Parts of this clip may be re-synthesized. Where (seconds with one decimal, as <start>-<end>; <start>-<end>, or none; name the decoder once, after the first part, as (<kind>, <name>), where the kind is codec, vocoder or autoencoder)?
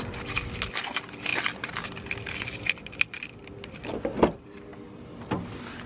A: none